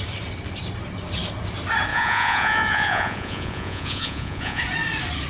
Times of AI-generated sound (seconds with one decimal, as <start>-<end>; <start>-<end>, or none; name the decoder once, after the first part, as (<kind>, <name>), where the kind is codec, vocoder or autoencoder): 1.9-4.6 (vocoder, Vocos)